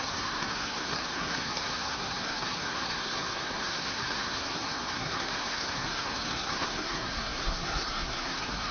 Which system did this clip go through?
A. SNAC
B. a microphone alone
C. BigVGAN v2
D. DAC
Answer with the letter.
A